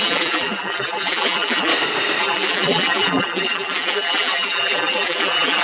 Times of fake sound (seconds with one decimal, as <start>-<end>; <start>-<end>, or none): 0.0-1.7; 2.2-5.6